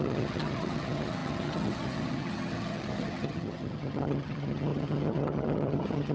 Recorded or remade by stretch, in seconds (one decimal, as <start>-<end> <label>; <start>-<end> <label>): 0.0-6.1 remade